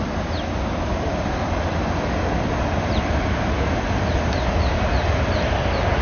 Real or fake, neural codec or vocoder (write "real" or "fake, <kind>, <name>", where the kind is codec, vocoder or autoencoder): real